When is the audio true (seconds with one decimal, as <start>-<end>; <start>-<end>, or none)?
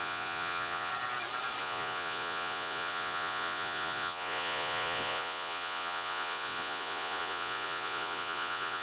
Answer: 0.9-1.6